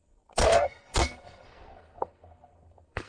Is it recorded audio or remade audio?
remade